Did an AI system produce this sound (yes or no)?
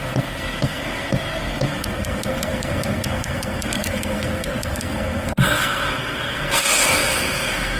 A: yes